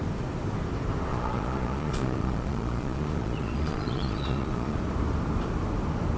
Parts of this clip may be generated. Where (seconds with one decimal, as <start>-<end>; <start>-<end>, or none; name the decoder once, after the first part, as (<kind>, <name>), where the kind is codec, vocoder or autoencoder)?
1.1-4.8 (vocoder, Vocos)